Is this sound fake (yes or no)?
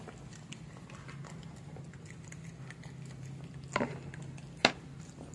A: no